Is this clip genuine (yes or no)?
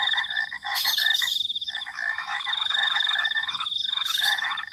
no